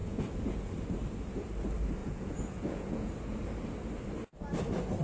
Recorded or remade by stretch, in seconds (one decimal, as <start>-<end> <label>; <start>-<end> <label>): 0.0-0.7 remade; 0.7-2.0 recorded; 2.0-3.1 remade; 3.1-5.0 recorded